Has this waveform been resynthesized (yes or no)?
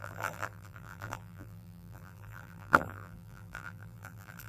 yes